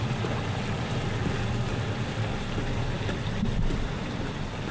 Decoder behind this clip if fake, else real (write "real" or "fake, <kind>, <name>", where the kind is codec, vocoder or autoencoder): real